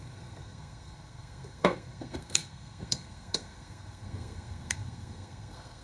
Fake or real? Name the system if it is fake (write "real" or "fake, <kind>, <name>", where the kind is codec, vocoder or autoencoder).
fake, codec, SNAC